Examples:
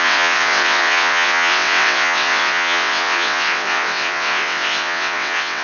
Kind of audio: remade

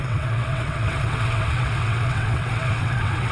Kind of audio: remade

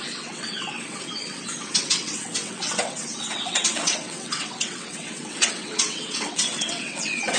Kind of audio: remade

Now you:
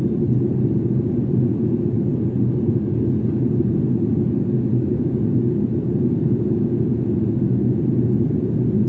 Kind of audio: recorded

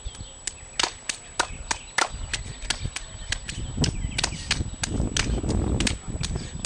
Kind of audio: recorded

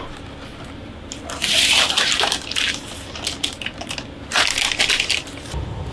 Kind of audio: recorded